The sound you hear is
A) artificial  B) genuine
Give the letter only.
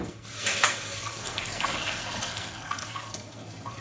A